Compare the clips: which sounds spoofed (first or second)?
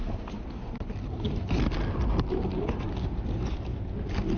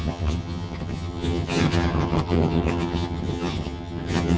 second